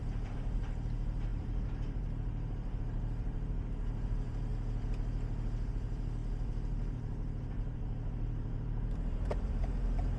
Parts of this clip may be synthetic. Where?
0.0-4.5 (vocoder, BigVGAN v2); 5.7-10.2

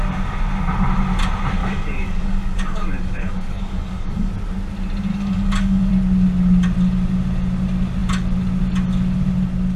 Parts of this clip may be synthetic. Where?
1.6-4.3 (codec, DAC); 5.1-5.9